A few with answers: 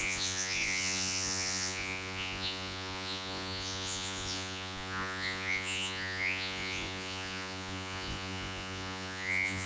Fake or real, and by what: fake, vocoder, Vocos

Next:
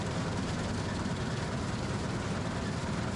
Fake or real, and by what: real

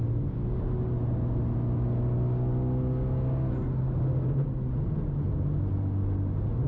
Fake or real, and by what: real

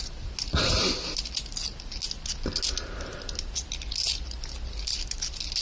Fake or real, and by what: real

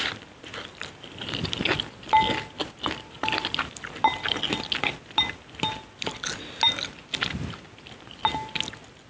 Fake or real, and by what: real